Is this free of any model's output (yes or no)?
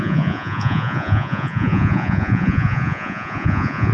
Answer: no